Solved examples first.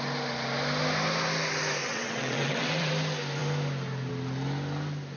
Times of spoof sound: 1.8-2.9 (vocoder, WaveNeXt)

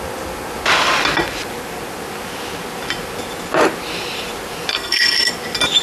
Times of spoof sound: 4.7-5.3 (codec, SNAC)

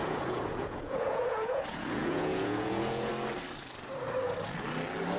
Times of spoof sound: 0.0-3.1 (vocoder, Vocos)